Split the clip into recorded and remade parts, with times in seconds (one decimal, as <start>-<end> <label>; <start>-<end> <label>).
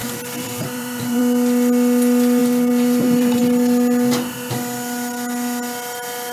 0.0-1.2 remade; 1.2-2.4 recorded; 2.4-3.4 remade; 3.4-6.3 recorded